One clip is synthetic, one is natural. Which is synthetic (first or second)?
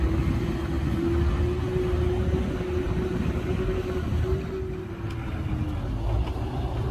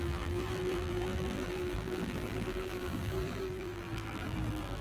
second